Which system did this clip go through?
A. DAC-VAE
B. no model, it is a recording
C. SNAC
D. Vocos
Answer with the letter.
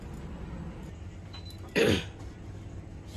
B